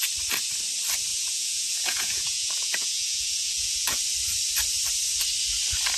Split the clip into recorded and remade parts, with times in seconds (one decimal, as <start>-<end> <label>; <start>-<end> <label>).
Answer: 0.0-1.1 recorded; 1.1-4.0 remade; 4.0-6.0 recorded